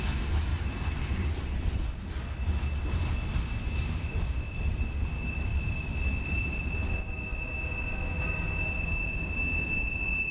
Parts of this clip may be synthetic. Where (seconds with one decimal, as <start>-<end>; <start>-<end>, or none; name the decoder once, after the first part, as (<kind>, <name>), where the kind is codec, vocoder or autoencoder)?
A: 0.5-2.1 (vocoder, BigVGAN v2); 5.5-6.6